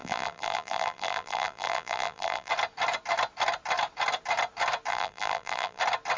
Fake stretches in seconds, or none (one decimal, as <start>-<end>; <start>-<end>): 0.0-2.5; 4.9-5.8